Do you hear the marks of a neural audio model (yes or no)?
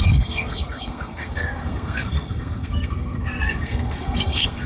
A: yes